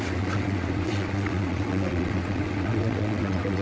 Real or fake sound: fake